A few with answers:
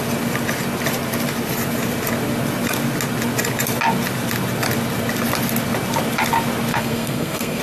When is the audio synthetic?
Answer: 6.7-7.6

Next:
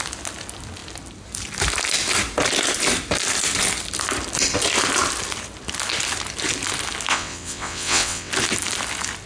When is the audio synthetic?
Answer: 7.1-8.3